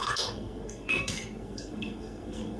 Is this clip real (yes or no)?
no